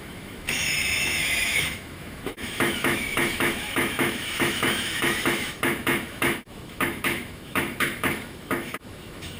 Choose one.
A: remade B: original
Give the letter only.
A